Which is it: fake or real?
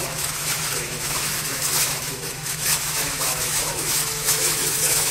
fake